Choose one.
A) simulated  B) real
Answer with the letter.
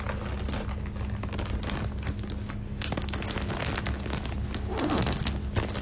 B